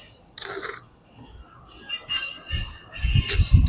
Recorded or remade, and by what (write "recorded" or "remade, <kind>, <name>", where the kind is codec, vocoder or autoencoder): recorded